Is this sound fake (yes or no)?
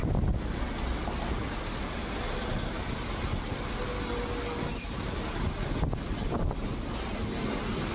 no